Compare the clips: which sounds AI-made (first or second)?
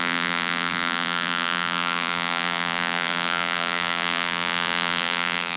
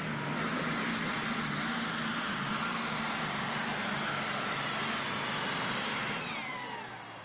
first